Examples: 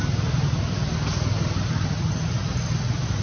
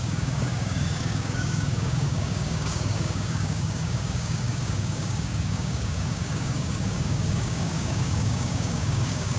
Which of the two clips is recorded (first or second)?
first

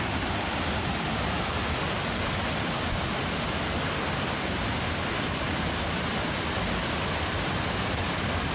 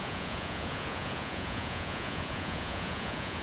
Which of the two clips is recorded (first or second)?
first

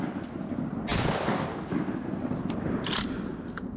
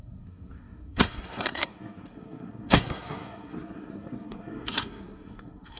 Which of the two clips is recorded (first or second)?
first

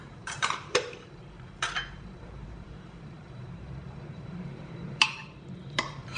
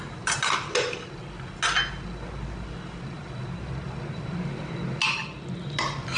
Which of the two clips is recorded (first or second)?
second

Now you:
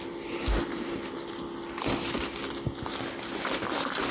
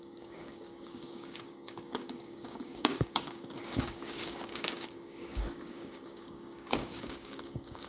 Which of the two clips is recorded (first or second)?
first